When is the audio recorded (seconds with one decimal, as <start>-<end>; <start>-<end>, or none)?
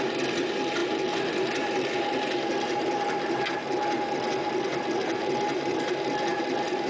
0.0-6.9